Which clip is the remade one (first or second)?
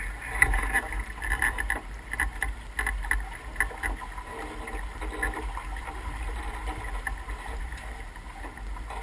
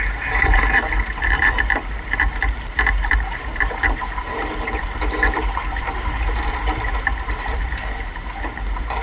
second